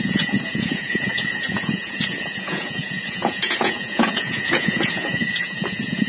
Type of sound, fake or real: fake